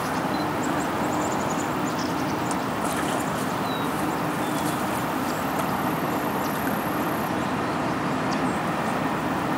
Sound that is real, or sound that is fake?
real